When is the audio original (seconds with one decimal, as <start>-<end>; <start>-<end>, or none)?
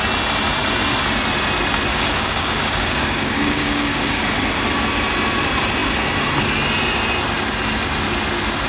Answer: 0.0-1.9; 4.2-8.7